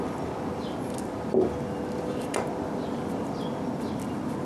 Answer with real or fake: real